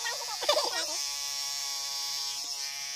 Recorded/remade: recorded